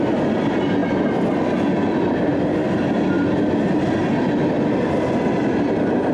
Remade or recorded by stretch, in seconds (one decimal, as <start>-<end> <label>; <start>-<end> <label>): 0.0-6.1 recorded